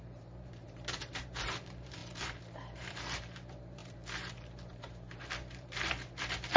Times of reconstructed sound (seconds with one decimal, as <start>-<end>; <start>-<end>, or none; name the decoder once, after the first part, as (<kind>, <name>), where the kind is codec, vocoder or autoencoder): 0.0-6.6 (vocoder, BigVGAN v2)